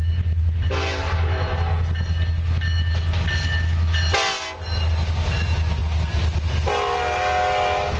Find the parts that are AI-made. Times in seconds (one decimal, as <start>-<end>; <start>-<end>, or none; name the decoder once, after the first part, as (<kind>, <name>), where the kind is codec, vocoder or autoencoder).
none